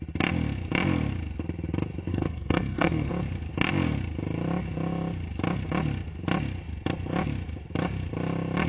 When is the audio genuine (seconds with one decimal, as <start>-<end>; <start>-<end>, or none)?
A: 0.0-2.1; 3.1-8.7

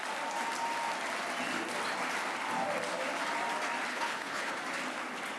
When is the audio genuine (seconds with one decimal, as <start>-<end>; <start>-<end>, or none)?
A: 0.0-3.9; 4.6-5.4